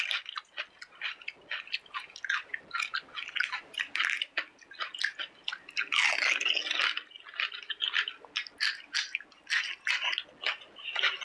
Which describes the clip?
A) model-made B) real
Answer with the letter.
B